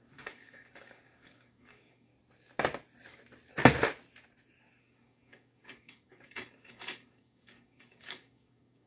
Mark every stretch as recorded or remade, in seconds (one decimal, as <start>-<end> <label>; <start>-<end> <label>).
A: 0.0-2.1 remade; 2.1-4.8 recorded; 4.8-8.9 remade